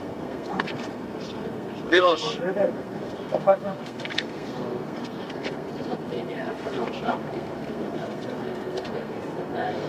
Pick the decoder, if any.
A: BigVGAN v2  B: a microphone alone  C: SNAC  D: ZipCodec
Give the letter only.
C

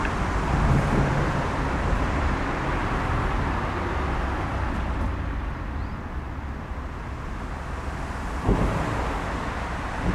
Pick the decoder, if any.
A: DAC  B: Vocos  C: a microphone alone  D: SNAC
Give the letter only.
C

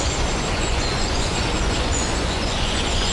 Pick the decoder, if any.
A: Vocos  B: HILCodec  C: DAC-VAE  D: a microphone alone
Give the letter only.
A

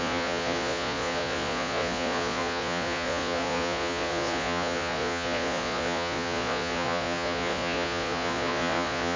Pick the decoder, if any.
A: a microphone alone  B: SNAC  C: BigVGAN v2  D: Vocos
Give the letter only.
D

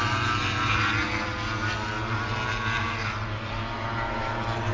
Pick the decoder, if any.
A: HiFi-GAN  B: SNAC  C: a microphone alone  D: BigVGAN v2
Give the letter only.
C